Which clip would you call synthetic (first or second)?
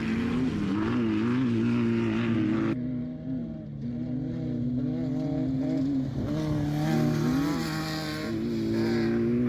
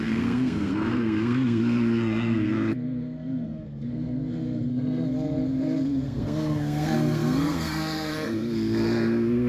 second